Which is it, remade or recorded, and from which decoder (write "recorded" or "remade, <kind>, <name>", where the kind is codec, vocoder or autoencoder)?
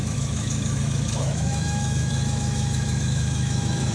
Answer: remade, autoencoder, DAC-VAE